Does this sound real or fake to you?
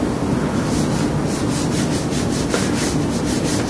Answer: real